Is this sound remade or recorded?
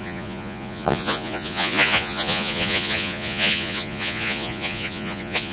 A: remade